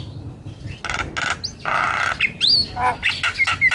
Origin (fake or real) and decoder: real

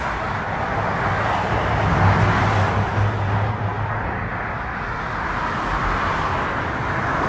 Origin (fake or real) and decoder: real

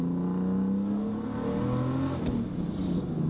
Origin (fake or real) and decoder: real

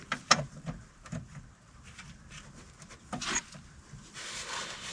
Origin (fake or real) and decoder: real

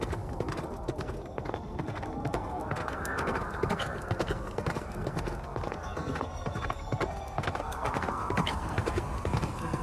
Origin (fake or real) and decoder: fake, codec, SNAC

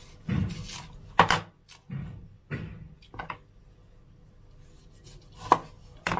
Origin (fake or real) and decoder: real